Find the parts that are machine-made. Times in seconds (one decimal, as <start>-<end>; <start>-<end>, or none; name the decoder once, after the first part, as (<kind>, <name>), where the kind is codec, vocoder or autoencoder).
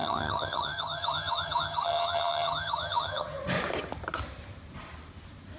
0.0-3.4 (vocoder, HiFi-GAN)